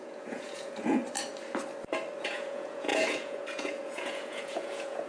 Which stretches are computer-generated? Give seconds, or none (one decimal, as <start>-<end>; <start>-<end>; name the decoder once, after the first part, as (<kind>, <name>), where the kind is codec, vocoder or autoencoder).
0.0-1.0 (vocoder, Vocos); 2.2-5.1